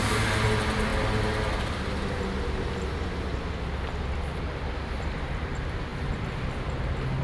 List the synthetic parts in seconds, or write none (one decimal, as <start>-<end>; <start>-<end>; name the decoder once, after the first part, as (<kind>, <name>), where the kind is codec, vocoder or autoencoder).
none